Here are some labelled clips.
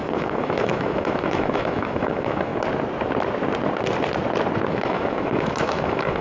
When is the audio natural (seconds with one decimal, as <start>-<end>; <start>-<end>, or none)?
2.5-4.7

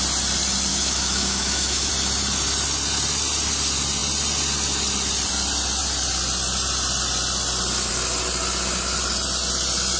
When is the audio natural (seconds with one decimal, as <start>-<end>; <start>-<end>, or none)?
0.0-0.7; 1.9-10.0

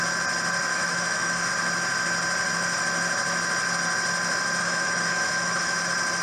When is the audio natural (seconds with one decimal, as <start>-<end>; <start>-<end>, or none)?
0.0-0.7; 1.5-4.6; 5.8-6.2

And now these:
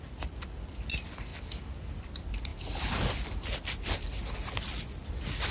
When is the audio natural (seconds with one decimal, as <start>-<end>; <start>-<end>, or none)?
0.0-5.5

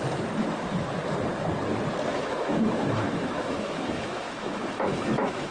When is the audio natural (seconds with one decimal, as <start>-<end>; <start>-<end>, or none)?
0.0-2.1